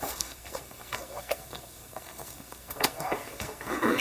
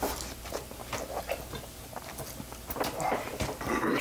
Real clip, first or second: second